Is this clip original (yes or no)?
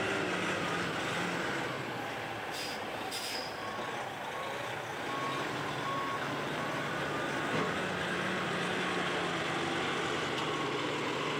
yes